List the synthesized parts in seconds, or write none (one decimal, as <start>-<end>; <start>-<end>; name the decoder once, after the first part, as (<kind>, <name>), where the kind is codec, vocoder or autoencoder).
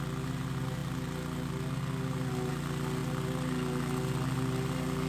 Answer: none